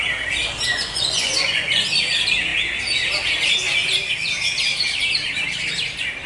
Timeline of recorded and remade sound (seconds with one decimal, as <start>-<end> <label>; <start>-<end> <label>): 0.0-0.7 recorded; 0.7-1.8 remade; 1.8-6.3 recorded